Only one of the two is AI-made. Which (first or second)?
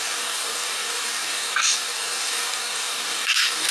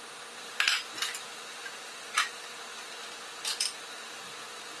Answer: first